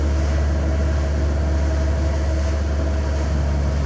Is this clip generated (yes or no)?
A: no